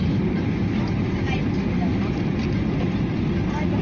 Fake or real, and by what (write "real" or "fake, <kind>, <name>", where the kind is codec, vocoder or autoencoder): real